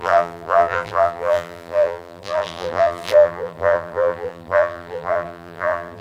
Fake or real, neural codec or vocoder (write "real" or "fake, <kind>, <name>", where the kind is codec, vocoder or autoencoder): fake, vocoder, BigVGAN v2